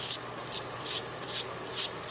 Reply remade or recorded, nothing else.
recorded